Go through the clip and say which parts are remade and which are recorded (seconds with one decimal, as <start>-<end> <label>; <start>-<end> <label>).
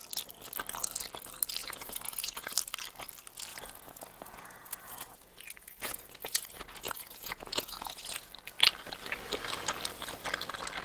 0.0-1.6 recorded; 1.6-2.5 remade; 2.5-3.5 recorded; 3.5-8.3 remade; 8.3-10.8 recorded